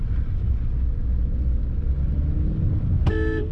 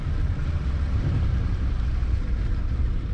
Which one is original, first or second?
first